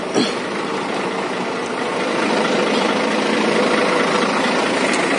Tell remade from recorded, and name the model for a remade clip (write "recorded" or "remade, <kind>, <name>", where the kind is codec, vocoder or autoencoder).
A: recorded